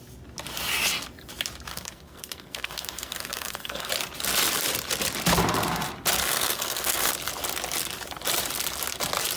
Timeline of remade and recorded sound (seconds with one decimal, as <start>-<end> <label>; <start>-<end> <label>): 0.0-1.7 recorded; 1.7-3.9 remade; 3.9-6.2 recorded; 6.2-7.1 remade; 7.1-9.4 recorded